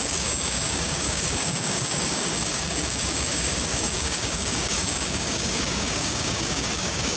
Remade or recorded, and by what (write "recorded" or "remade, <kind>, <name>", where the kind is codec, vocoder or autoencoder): remade, codec, DAC